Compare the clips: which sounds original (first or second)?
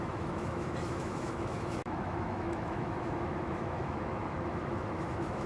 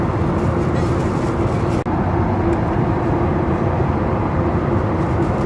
second